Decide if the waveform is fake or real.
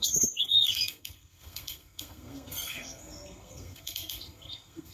fake